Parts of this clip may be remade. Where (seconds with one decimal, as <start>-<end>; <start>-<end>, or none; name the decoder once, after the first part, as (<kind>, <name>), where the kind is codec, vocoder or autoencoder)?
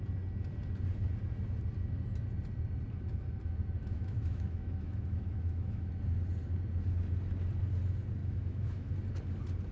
3.8-5.9 (autoencoder, DAC-VAE); 8.2-8.9